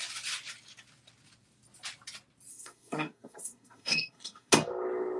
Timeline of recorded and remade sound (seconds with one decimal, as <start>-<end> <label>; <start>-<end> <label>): 0.0-2.5 recorded; 2.5-4.5 remade; 4.5-5.2 recorded